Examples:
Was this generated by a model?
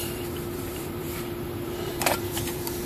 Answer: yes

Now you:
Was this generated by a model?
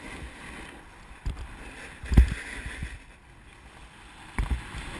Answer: no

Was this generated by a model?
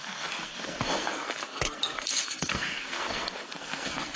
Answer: yes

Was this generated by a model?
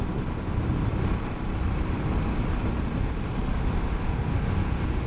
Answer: no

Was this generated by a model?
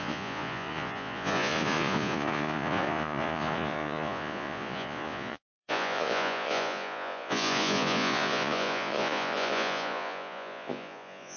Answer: yes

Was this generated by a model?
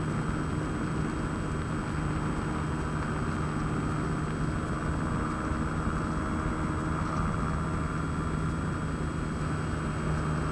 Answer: no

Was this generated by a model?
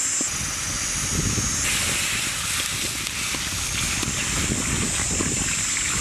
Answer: no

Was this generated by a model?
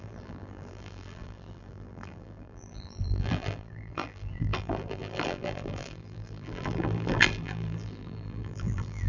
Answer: yes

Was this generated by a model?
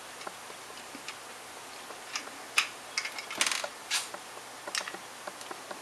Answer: no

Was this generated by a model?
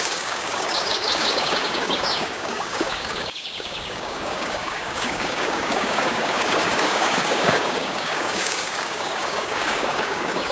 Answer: yes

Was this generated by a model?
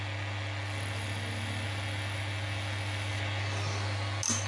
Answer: no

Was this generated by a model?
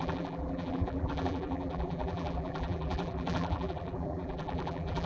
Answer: yes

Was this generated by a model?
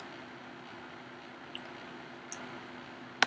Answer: no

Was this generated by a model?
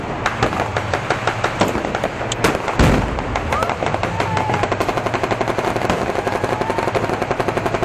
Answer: no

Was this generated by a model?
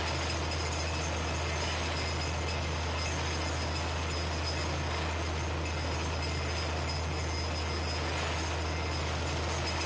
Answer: no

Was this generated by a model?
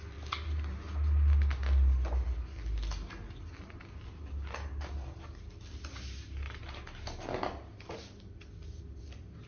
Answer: no